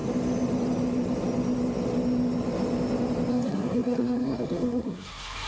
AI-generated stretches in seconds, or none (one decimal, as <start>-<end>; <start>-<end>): 3.3-5.5